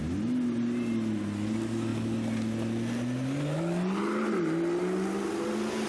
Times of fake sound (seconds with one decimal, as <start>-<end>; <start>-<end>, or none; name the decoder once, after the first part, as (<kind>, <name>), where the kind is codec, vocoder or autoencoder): none

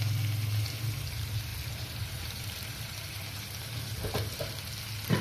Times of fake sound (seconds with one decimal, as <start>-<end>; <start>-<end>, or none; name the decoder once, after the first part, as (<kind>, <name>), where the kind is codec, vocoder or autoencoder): 1.5-4.6 (vocoder, BigVGAN v2)

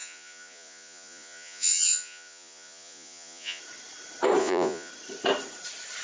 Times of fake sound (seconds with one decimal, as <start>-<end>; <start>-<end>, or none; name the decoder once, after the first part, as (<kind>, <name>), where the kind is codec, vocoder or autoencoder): 0.0-3.6 (vocoder, Vocos); 4.4-4.9

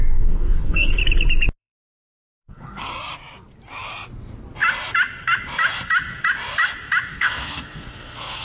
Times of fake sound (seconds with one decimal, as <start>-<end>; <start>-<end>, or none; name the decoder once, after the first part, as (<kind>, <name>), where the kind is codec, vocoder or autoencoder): 0.0-1.0 (codec, SNAC); 1.6-2.9; 7.1-8.4

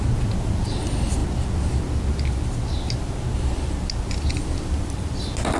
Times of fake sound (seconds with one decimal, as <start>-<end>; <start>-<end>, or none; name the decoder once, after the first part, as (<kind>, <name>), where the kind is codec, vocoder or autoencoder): none

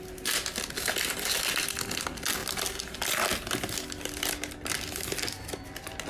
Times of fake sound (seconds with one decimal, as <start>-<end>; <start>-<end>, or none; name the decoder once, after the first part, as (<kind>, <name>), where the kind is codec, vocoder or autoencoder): none